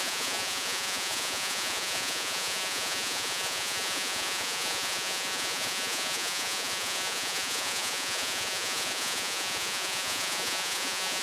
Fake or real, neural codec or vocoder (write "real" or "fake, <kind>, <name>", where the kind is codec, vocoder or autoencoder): fake, vocoder, Vocos